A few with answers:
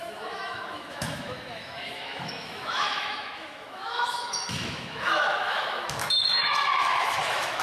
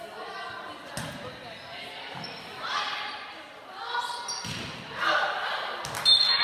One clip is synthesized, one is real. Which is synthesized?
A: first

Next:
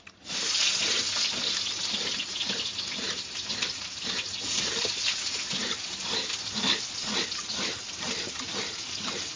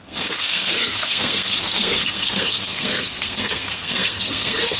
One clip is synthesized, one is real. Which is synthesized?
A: second